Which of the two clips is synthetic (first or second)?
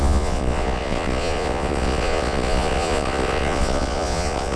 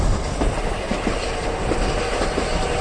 first